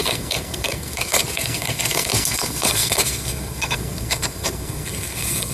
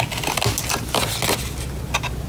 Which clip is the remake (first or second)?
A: first